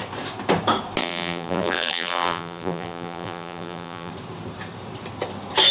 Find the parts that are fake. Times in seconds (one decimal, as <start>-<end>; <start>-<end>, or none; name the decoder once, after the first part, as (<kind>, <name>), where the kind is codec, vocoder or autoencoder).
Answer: 1.0-4.1 (vocoder, BigVGAN v2)